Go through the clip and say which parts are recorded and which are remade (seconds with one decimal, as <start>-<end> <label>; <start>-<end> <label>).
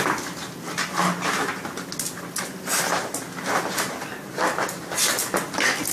0.0-5.9 recorded